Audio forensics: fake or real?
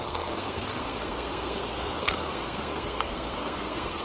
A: fake